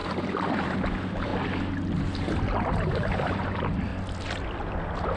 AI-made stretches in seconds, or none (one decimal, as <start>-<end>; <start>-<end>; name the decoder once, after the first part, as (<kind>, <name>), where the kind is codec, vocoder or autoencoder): 0.0-1.3 (vocoder, BigVGAN v2); 2.4-5.2